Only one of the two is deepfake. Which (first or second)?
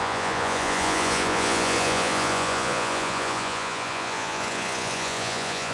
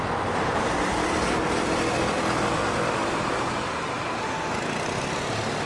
first